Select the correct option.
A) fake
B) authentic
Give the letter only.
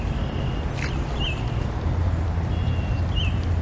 B